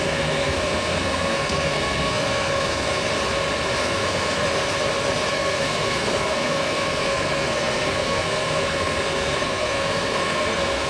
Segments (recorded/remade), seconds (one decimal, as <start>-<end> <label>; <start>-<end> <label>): 0.0-3.1 remade; 3.1-3.8 recorded; 3.8-4.4 remade; 4.4-5.3 recorded; 5.3-10.9 remade